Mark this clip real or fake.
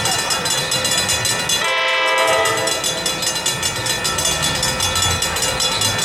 real